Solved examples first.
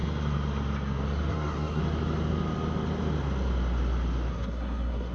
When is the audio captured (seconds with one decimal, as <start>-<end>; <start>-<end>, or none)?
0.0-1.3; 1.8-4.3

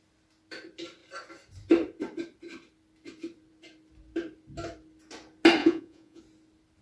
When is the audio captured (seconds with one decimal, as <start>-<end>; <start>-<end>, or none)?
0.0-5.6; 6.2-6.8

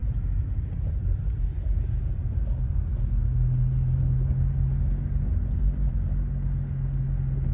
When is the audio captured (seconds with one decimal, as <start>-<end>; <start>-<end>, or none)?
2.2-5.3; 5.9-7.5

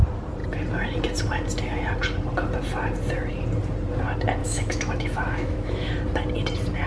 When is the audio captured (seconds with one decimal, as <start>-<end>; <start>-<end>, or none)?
0.0-4.4; 5.9-6.9